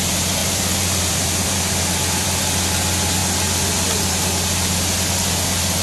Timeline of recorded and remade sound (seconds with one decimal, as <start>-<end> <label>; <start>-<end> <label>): 0.0-0.4 recorded; 0.4-2.4 remade; 2.4-5.8 recorded